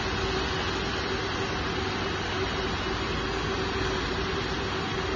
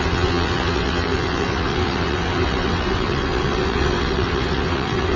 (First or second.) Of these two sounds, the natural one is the first